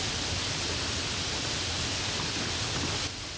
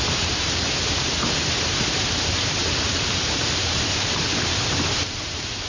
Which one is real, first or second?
first